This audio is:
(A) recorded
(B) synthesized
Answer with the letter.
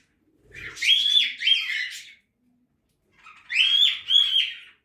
A